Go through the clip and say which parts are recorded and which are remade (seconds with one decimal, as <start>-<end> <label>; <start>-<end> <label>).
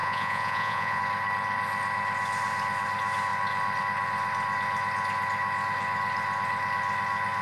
0.0-1.0 remade; 1.0-7.4 recorded